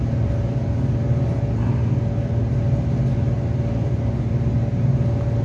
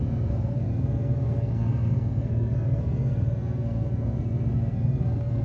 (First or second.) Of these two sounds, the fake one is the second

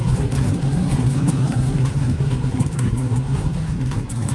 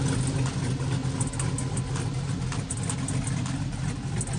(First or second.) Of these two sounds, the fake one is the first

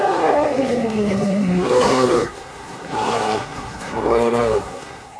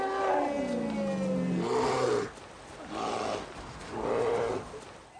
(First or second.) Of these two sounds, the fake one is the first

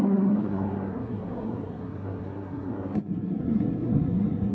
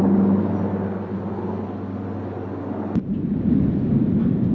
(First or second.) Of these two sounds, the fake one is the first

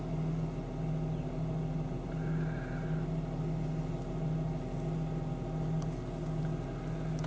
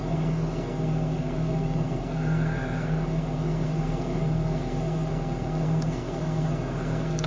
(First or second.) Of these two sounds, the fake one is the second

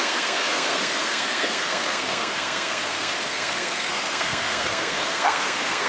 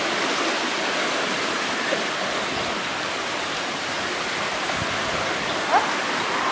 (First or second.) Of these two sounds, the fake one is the first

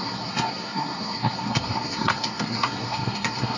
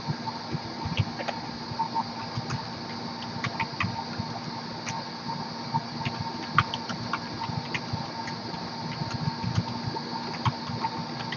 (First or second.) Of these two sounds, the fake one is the first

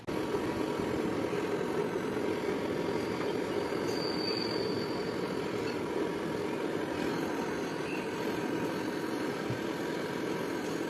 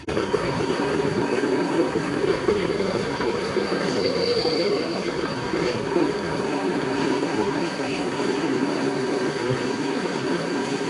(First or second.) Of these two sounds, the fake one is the second